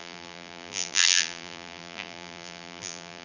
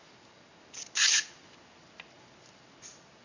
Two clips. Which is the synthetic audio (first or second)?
first